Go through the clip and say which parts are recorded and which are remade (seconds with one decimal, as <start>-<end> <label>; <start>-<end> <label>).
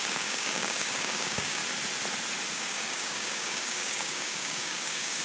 0.0-1.6 remade; 1.6-2.5 recorded; 2.5-5.2 remade